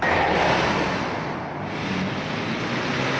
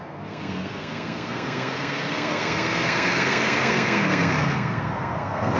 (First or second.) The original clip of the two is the first